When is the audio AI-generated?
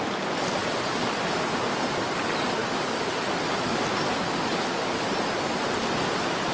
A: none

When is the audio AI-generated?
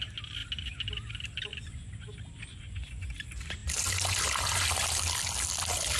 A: 1.5-2.1 (vocoder, Vocos); 2.5-3.1